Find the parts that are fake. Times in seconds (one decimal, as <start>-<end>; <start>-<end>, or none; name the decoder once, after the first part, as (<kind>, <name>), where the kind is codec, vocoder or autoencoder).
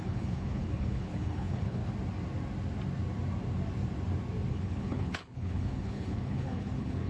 0.0-1.8 (codec, HILCodec); 4.5-7.1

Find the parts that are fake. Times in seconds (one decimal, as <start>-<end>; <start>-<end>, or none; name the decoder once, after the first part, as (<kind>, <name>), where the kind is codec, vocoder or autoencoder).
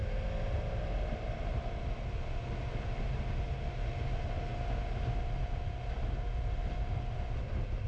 none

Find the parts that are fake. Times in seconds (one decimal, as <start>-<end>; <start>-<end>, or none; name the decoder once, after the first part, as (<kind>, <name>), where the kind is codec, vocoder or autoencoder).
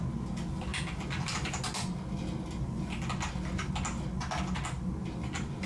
none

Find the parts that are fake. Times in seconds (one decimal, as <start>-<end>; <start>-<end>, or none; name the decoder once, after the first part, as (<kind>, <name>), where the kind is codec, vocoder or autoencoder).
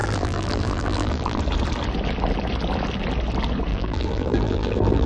0.0-1.4 (vocoder, BigVGAN v2); 3.7-5.1